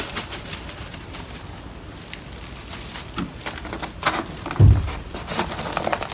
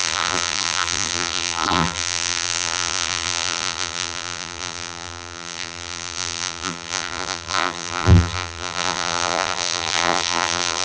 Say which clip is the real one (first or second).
first